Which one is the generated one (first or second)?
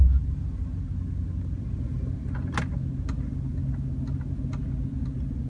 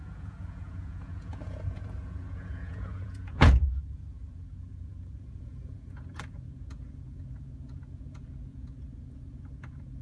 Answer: second